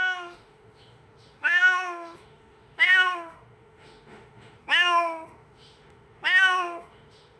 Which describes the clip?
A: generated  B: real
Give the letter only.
A